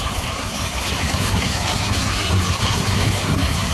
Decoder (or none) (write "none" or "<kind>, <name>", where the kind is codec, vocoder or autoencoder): codec, SNAC